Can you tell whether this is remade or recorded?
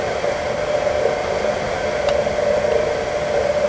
recorded